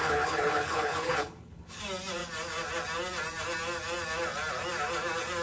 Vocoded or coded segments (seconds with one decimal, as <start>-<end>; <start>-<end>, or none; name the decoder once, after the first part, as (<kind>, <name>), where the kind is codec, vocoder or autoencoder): 0.0-1.8 (codec, HILCodec)